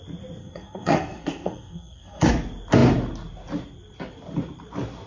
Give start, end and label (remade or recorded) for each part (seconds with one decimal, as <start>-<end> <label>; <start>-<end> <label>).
0.0-0.4 recorded; 0.4-2.3 remade; 2.3-5.1 recorded